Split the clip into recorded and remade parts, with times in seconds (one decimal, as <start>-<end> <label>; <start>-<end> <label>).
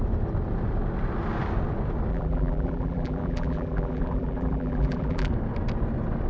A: 0.0-2.1 recorded; 2.1-5.3 remade; 5.3-6.3 recorded